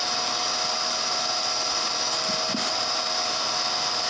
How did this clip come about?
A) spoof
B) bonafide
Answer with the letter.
B